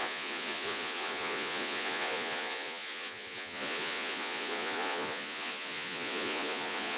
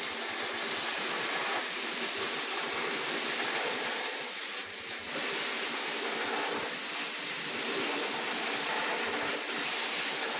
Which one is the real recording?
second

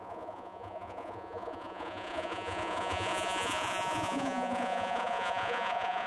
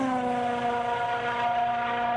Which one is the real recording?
second